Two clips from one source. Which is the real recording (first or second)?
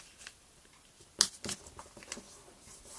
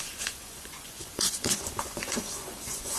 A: first